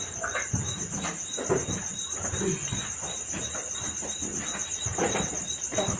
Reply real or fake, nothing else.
real